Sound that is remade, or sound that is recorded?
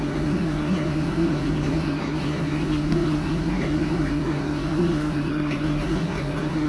remade